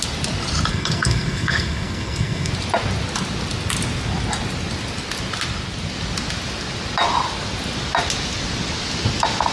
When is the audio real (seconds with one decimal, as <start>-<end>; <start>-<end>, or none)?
0.0-0.7; 2.5-9.5